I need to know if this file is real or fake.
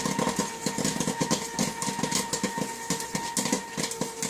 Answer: real